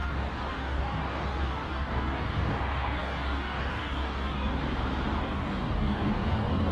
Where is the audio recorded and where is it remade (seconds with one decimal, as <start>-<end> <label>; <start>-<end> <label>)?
0.0-4.6 remade; 4.6-5.2 recorded; 5.2-6.7 remade